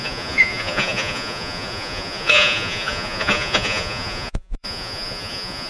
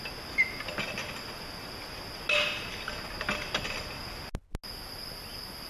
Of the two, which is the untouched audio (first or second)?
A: second